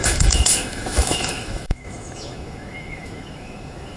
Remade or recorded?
remade